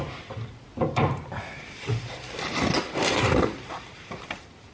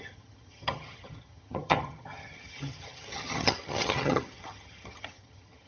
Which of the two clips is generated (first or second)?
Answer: second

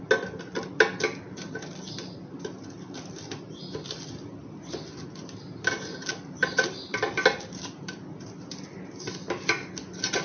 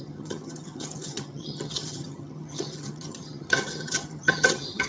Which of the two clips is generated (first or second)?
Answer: second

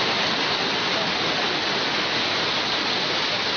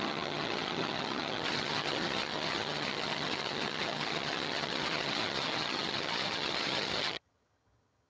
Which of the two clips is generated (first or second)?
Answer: second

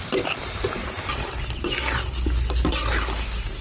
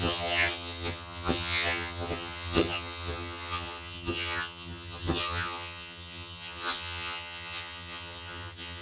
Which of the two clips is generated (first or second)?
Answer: second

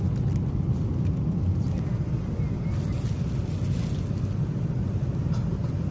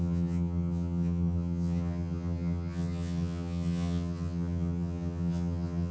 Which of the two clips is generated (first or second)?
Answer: second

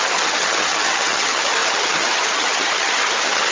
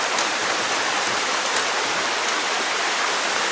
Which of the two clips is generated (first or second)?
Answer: first